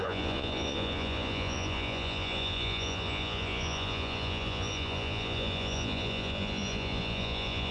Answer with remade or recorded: remade